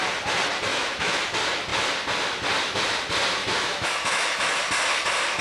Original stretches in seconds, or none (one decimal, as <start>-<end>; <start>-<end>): 0.0-0.7; 1.2-3.4; 4.6-5.4

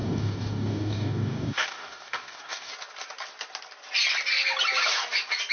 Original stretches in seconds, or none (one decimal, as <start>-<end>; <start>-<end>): 2.7-5.5

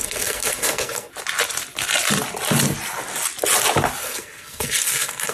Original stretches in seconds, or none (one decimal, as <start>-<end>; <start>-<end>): 1.1-4.0